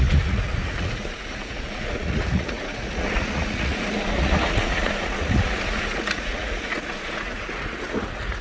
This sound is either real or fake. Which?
fake